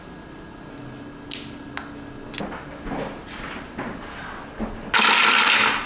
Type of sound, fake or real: real